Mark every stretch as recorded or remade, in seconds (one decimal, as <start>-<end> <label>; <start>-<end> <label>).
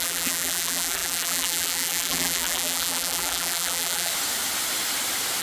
0.0-4.1 remade; 4.1-5.4 recorded